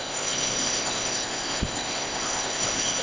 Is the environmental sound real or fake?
fake